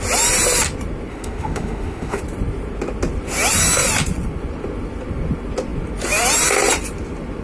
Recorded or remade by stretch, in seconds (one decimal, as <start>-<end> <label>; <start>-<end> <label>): 0.0-1.1 recorded; 1.1-2.2 remade; 2.2-7.4 recorded